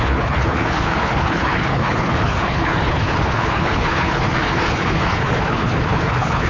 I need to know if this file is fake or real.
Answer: fake